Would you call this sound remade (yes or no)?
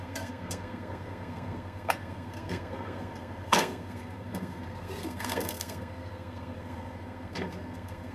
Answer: yes